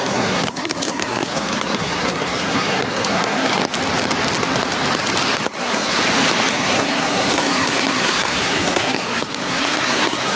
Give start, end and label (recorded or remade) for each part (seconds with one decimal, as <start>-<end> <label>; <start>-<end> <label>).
0.0-3.6 remade; 3.6-5.6 recorded; 5.6-6.0 remade; 6.0-6.5 recorded; 6.5-10.4 remade